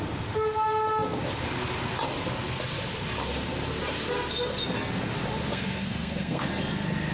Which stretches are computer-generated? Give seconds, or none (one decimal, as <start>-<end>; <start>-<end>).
5.5-6.5